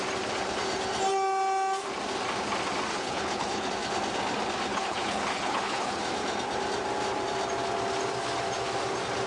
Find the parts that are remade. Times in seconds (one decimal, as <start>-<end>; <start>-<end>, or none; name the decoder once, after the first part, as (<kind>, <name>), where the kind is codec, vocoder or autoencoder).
2.9-3.7 (codec, HILCodec); 4.7-6.0